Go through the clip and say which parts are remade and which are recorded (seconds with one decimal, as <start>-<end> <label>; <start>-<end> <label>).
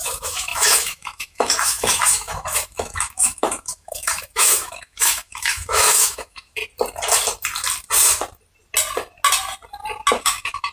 0.0-6.6 remade; 6.6-10.2 recorded; 10.2-10.7 remade